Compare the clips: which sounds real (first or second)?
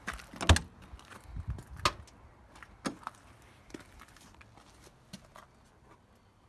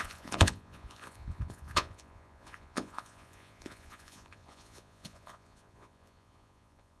first